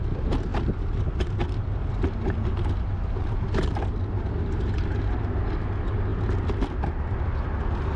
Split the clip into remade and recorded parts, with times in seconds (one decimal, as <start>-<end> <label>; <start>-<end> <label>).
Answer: 0.0-8.0 recorded